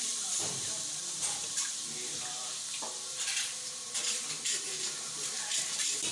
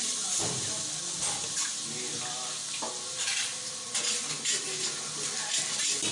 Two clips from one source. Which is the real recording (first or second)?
second